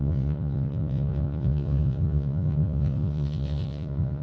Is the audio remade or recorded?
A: remade